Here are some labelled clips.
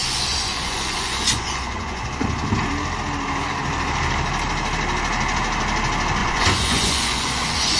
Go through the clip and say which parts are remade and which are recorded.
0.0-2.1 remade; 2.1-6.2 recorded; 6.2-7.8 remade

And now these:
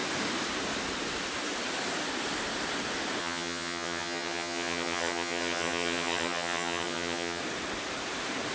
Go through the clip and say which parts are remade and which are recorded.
0.0-3.2 recorded; 3.2-7.4 remade; 7.4-8.5 recorded

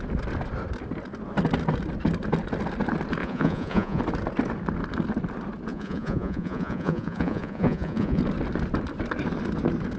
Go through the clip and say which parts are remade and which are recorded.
0.0-3.2 recorded; 3.2-4.0 remade; 4.0-5.7 recorded; 5.7-8.2 remade; 8.2-10.0 recorded

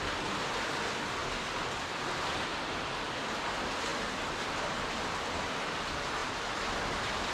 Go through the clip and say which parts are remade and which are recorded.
0.0-1.2 recorded; 1.2-2.0 remade; 2.0-2.5 recorded; 2.5-3.1 remade; 3.1-7.3 recorded

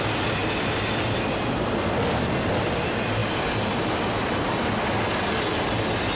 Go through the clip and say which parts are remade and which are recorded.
0.0-6.1 recorded

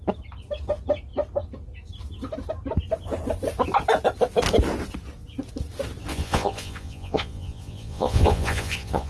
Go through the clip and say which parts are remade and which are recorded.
0.0-6.1 recorded; 6.1-9.1 remade